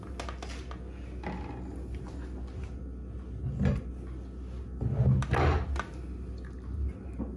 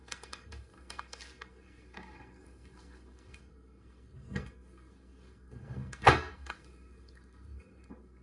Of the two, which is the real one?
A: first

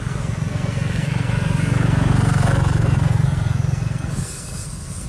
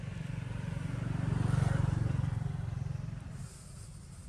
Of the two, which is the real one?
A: second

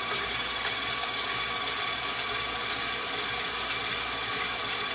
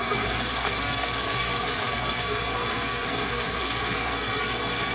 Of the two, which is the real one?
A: first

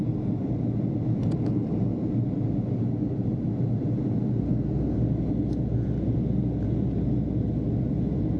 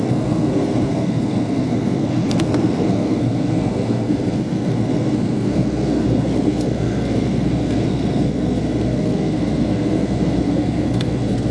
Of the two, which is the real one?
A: first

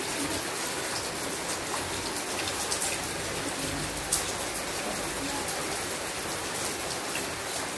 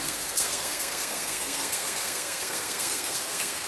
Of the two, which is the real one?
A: first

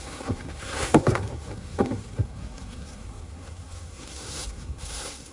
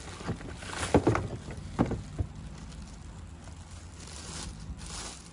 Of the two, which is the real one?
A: second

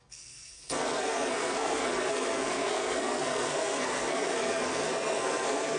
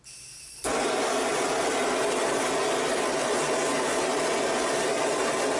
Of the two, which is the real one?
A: second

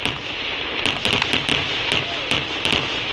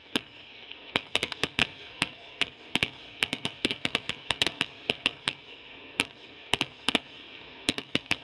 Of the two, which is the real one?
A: first